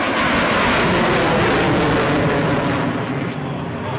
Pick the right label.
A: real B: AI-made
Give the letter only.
A